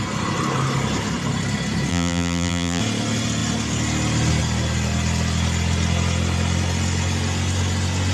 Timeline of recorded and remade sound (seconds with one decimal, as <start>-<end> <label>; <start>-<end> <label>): 0.0-1.9 recorded; 1.9-2.8 remade; 2.8-8.1 recorded